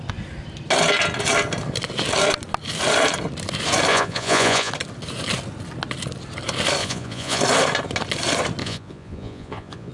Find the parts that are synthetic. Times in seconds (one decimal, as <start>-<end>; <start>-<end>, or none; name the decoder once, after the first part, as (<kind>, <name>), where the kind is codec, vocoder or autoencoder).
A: 3.9-4.7 (vocoder, Vocos); 6.8-7.4; 8.6-9.9